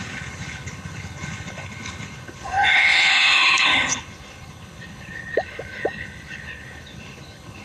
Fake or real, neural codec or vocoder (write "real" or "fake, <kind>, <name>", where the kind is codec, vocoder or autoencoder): fake, codec, HILCodec